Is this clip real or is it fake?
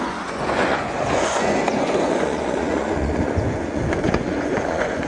fake